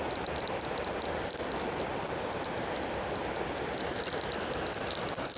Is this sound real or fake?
real